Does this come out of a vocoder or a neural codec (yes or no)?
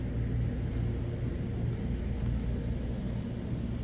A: no